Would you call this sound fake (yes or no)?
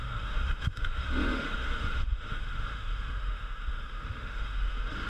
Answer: yes